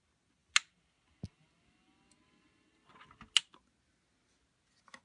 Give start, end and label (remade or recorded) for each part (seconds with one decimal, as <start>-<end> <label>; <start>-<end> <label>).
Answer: 0.0-5.0 recorded